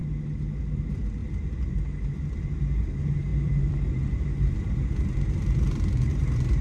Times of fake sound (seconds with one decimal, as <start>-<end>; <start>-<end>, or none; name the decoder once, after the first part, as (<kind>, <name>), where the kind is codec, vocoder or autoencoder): 0.7-1.2 (vocoder, BigVGAN v2); 1.7-6.6